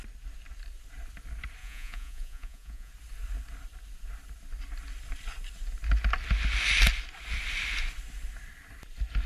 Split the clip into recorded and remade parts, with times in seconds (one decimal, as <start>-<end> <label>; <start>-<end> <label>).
0.0-1.6 recorded; 1.6-2.9 remade; 2.9-9.3 recorded